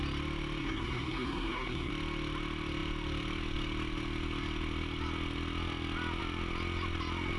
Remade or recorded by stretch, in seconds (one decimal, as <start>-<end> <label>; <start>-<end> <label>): 0.0-0.6 recorded; 0.6-1.9 remade; 1.9-7.4 recorded